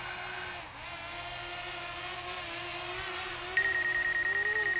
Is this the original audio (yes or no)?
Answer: yes